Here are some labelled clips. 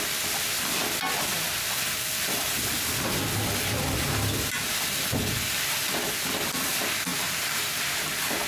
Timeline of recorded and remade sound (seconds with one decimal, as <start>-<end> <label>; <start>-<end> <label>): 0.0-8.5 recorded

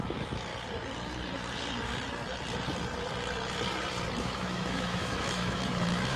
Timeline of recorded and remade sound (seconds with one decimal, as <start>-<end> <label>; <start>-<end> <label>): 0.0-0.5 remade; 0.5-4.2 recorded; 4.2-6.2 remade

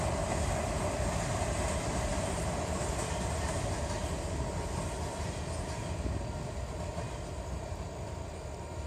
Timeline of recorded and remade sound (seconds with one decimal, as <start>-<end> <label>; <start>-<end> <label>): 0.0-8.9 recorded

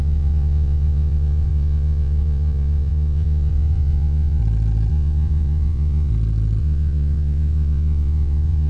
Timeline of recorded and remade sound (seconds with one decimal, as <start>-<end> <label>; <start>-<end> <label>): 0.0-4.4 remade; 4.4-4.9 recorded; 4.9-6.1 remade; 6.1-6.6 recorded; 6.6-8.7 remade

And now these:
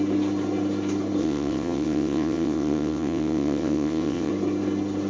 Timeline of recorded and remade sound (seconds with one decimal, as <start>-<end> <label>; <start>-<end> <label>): 0.0-1.2 recorded; 1.2-4.3 remade; 4.3-5.1 recorded

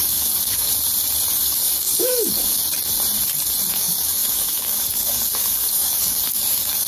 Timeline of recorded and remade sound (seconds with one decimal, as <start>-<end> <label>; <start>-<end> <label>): 0.0-0.7 remade; 0.7-1.3 recorded; 1.3-2.6 remade; 2.6-3.7 recorded; 3.7-6.9 remade